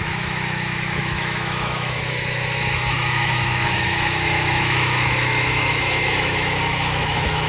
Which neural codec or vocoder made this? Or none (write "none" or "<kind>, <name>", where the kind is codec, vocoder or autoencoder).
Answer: autoencoder, DAC-VAE